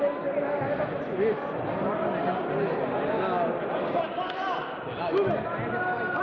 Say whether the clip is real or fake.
real